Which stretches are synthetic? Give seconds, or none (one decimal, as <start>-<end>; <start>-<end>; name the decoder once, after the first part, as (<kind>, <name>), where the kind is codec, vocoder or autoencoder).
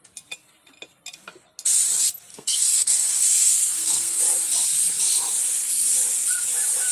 2.3-4.2 (codec, SNAC)